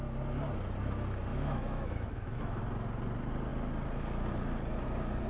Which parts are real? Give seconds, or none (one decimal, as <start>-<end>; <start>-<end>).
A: 0.0-1.3; 2.6-5.3